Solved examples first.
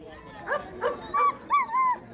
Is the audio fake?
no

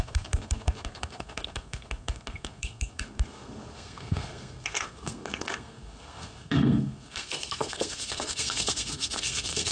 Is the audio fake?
yes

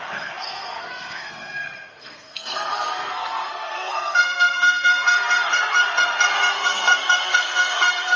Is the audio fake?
yes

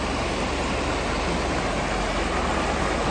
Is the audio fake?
no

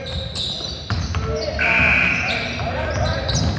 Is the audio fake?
no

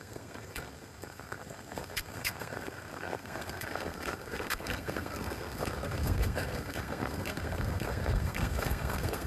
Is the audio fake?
yes